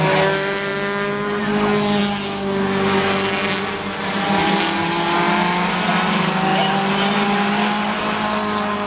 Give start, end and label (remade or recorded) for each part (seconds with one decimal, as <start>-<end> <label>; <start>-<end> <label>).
0.0-6.5 recorded; 6.5-8.0 remade; 8.0-8.9 recorded